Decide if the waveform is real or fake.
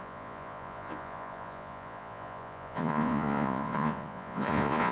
fake